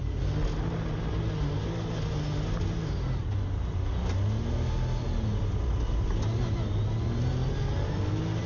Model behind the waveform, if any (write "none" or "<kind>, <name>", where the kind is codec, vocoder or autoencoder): none